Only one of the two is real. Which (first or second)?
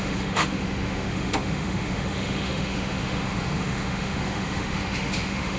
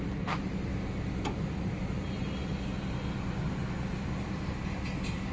second